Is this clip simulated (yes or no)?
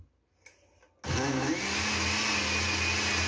no